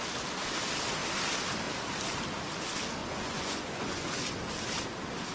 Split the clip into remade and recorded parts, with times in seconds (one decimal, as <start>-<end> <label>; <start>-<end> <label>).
0.0-3.0 recorded; 3.0-4.2 remade; 4.2-5.3 recorded